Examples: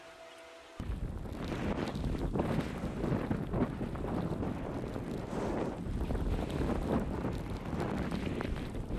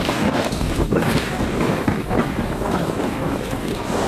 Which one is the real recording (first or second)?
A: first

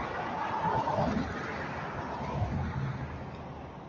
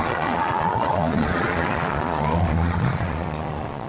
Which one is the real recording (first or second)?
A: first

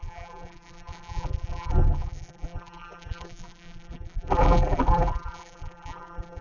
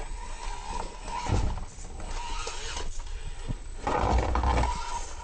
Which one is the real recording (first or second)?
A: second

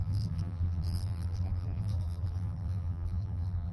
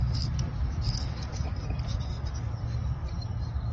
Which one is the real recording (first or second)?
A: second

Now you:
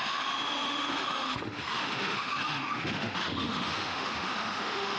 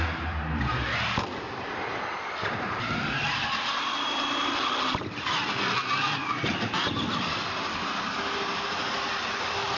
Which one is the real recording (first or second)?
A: second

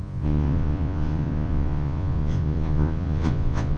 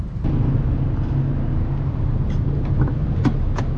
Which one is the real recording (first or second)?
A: second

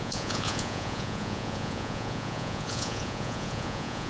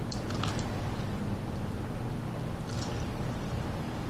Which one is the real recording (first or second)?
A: second